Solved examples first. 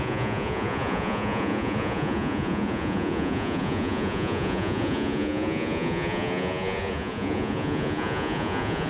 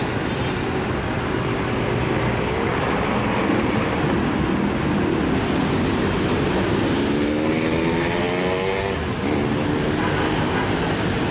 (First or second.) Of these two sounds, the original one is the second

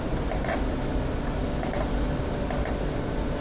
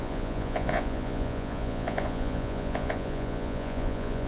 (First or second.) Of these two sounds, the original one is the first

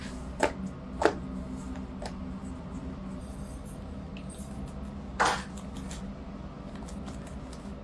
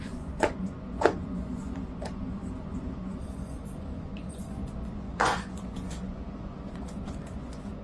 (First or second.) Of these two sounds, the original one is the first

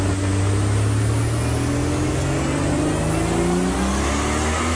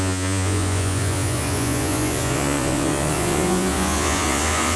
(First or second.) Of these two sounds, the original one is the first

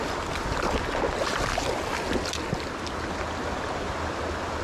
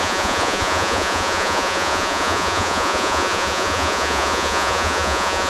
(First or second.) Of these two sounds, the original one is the first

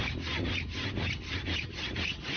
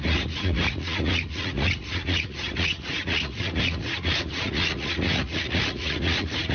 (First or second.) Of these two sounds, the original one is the first